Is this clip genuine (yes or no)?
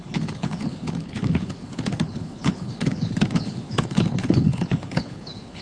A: no